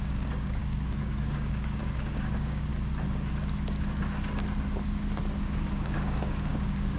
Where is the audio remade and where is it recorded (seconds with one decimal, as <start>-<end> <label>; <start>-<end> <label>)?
0.0-2.7 remade; 2.7-5.4 recorded; 5.4-7.0 remade